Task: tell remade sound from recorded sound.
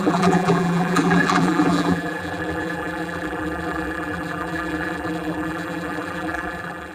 remade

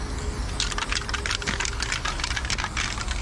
recorded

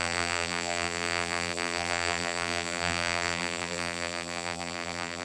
remade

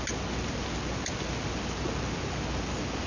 recorded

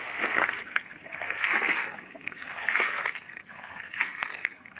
remade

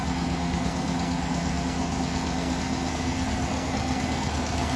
remade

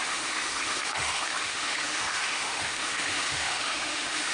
remade